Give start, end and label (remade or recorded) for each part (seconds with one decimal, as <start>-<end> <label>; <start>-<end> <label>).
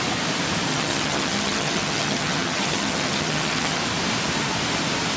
0.0-0.7 recorded; 0.7-3.8 remade; 3.8-5.2 recorded